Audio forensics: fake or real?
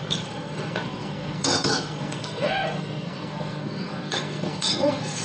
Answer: fake